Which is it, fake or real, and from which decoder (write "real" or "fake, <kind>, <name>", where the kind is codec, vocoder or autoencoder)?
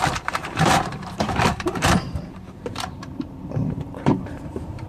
fake, vocoder, BigVGAN v2